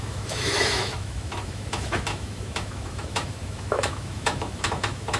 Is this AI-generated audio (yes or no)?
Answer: yes